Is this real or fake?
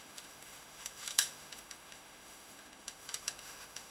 fake